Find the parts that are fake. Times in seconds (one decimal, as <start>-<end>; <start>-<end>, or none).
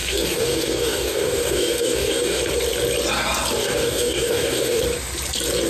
0.0-2.4; 3.6-4.8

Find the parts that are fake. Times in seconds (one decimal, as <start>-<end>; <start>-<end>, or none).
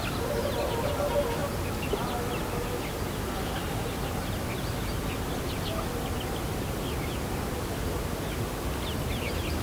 none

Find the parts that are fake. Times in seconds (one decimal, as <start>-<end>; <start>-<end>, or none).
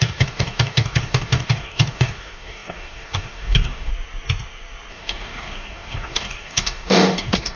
0.0-3.9; 4.9-7.6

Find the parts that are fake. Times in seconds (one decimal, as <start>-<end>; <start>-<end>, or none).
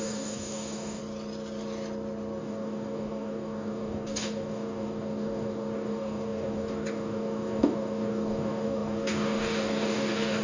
0.0-1.0; 2.4-10.4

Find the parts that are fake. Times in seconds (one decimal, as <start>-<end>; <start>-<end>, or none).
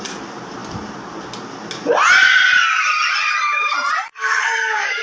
4.1-5.0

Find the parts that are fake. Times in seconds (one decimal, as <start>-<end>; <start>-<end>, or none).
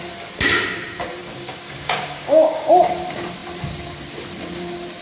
1.2-2.7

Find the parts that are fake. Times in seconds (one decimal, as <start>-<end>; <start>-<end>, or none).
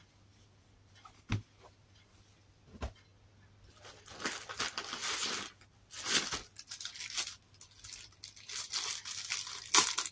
none